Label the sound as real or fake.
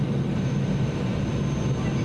real